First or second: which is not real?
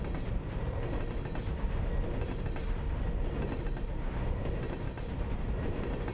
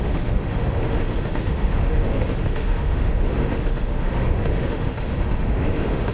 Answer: second